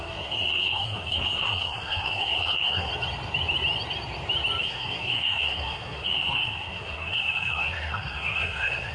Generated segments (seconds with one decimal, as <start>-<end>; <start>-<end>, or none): 0.0-2.9; 4.6-8.9